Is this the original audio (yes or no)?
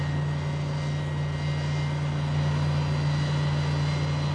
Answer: yes